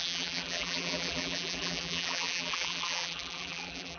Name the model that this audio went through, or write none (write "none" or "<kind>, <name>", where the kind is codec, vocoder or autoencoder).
vocoder, BigVGAN v2